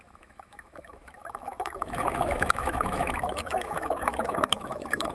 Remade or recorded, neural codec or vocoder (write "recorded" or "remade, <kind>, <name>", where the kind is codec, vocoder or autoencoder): remade, autoencoder, DAC-VAE